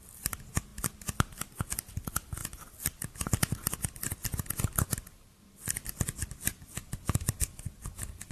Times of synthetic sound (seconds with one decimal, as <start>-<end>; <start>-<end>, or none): none

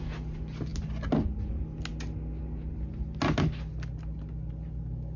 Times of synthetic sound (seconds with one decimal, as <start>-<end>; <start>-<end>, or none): none